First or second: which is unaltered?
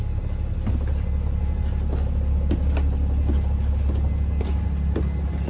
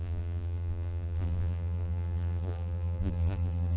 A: first